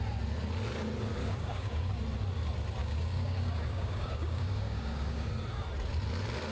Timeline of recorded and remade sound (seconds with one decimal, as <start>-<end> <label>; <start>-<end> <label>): 0.0-1.2 recorded; 1.2-1.9 remade; 1.9-2.8 recorded; 2.8-5.3 remade; 5.3-6.5 recorded